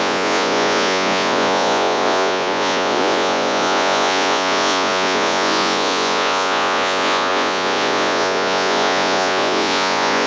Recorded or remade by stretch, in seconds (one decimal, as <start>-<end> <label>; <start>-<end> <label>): 0.0-10.3 remade